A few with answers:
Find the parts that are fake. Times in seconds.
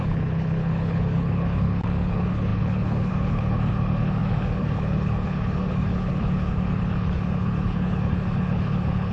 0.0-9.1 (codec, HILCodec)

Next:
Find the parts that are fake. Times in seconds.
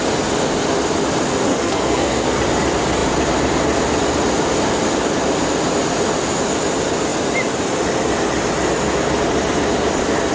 1.5-2.4 (codec, SNAC)